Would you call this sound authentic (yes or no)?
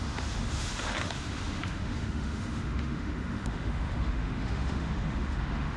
no